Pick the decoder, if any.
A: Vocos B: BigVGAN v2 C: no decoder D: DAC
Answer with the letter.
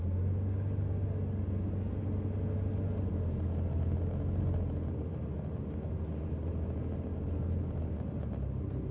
C